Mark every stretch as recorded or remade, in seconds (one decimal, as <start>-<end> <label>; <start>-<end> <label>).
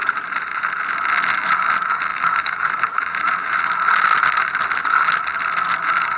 0.0-0.8 remade; 0.8-2.1 recorded; 2.1-3.6 remade; 3.6-6.2 recorded